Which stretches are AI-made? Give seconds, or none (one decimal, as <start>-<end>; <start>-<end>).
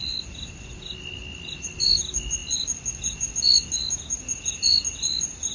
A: none